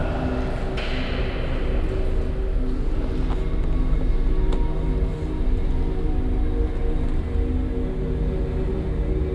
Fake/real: real